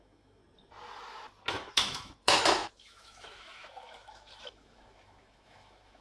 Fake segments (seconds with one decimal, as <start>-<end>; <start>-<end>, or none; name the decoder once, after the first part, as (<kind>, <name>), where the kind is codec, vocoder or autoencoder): 0.0-0.4 (autoencoder, DAC-VAE); 1.5-6.0